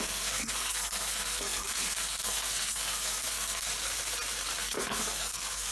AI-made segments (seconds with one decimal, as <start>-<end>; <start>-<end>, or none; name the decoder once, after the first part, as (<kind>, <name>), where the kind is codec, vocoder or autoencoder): 0.0-3.7 (codec, SNAC); 4.6-5.7